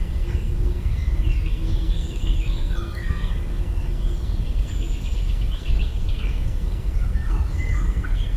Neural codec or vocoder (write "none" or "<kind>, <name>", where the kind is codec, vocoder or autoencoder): codec, SNAC